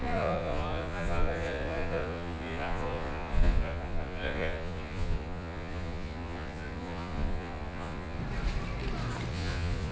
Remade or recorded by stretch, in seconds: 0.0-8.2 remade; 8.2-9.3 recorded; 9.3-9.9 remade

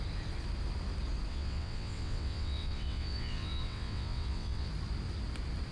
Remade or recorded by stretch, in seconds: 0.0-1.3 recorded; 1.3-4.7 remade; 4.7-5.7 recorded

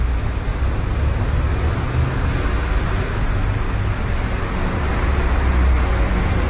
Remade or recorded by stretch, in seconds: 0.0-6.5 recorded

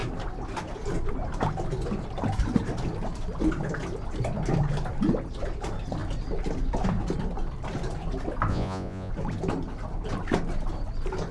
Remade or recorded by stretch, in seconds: 0.0-8.5 recorded; 8.5-9.1 remade; 9.1-11.3 recorded

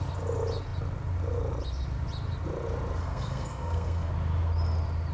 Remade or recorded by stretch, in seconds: 0.0-3.0 recorded; 3.0-4.1 remade; 4.1-5.1 recorded